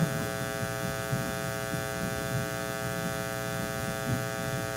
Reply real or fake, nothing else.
real